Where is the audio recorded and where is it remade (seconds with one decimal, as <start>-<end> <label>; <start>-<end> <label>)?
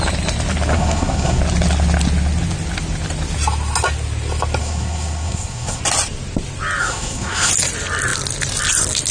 0.0-0.7 recorded; 0.7-1.4 remade; 1.4-4.6 recorded; 4.6-5.8 remade; 5.8-6.8 recorded; 6.8-7.5 remade; 7.5-9.1 recorded